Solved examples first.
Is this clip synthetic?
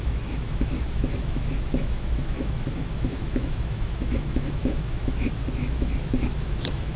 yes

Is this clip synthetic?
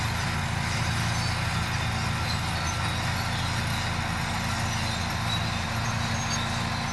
no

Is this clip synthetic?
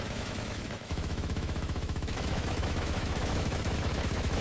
yes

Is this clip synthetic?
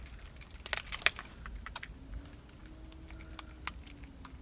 no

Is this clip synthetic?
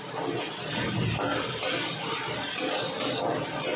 no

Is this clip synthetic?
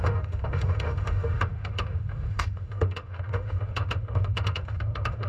yes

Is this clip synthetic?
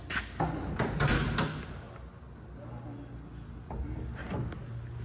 no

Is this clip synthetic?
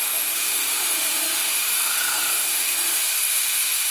yes